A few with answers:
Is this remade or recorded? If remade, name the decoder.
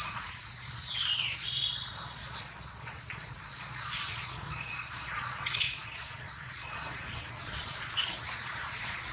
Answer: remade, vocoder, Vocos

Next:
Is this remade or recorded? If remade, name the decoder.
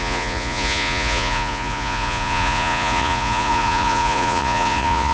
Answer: remade, vocoder, Vocos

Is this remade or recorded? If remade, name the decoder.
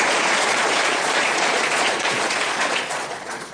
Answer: remade, vocoder, Vocos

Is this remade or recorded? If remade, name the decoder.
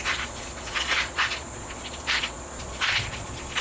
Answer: remade, vocoder, Vocos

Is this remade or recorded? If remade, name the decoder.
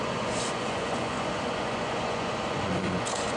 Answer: remade, vocoder, Vocos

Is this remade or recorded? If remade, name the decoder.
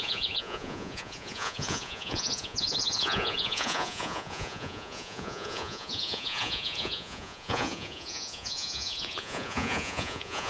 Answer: remade, vocoder, Vocos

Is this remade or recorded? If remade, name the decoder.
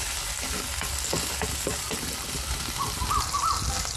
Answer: recorded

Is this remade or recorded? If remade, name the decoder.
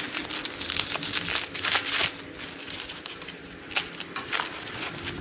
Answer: recorded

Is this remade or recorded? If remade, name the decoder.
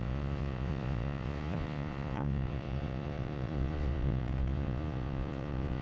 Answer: remade, vocoder, Vocos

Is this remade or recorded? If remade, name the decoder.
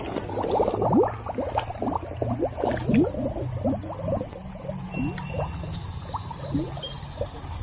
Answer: recorded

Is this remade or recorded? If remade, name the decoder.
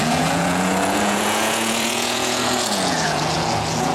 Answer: remade, vocoder, Vocos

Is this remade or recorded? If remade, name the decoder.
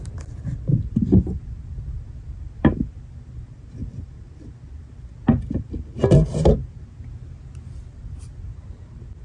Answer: recorded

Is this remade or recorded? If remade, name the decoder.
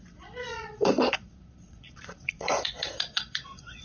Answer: remade, vocoder, Vocos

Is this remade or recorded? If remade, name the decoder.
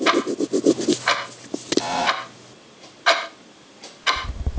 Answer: recorded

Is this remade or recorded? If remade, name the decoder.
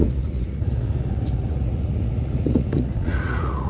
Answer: remade, vocoder, Vocos